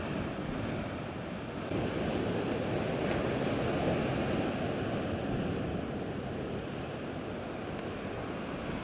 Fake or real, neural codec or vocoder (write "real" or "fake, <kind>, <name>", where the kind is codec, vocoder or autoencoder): real